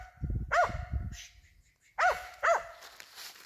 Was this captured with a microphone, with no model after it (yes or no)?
yes